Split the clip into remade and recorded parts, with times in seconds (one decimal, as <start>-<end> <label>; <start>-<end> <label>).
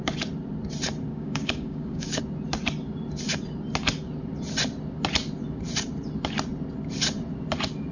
0.0-1.1 recorded; 1.1-2.2 remade; 2.2-7.9 recorded